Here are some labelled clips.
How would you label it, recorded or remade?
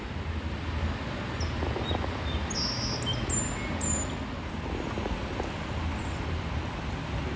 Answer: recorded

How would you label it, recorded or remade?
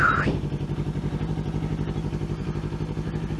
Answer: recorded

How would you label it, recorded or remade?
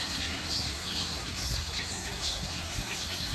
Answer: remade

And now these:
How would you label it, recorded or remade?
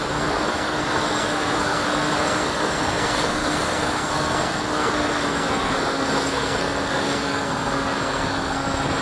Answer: remade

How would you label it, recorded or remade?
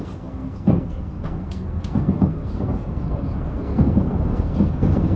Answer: remade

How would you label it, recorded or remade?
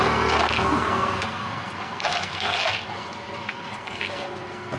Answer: remade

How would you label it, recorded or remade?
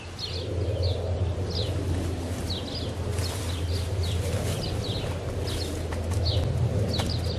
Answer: recorded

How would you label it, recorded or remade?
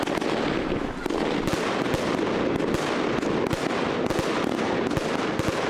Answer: recorded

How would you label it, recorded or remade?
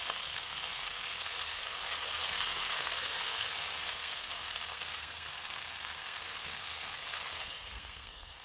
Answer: remade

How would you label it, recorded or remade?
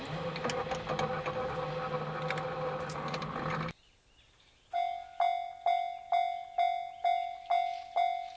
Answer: recorded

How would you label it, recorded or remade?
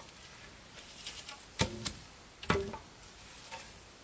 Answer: recorded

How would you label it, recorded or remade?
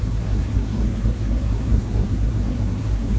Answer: remade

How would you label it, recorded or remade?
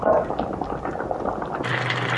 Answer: recorded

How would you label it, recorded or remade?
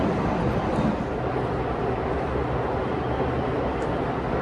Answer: recorded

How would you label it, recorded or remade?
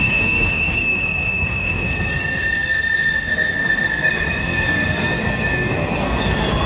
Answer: remade